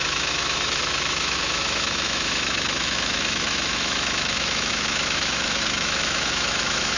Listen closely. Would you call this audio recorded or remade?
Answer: remade